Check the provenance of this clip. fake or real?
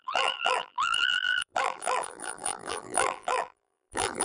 fake